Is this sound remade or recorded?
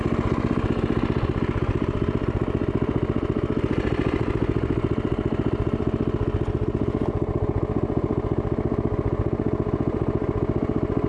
recorded